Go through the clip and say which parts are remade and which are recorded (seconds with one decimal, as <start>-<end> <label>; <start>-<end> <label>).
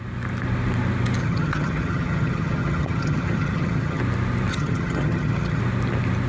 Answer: 0.0-1.2 recorded; 1.2-4.0 remade; 4.0-4.5 recorded; 4.5-5.6 remade; 5.6-6.3 recorded